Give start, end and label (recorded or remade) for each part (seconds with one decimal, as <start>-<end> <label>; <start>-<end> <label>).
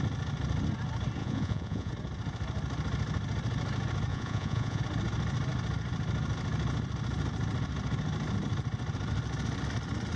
0.0-1.2 recorded; 1.2-1.9 remade; 1.9-4.1 recorded; 4.1-4.8 remade; 4.8-10.2 recorded